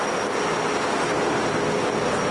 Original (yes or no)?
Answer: yes